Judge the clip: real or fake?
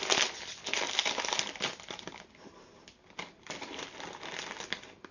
real